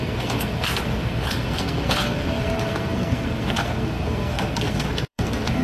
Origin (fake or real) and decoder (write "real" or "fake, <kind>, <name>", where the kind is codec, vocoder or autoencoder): fake, codec, SNAC